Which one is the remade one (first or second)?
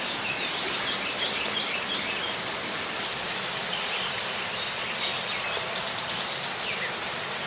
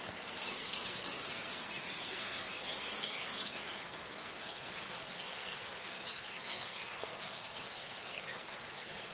second